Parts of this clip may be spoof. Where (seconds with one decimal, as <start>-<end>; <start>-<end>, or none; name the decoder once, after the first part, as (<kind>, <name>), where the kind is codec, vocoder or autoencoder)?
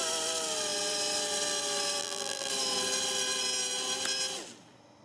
2.0-2.5 (vocoder, BigVGAN v2)